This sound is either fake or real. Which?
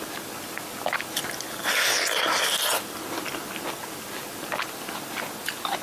real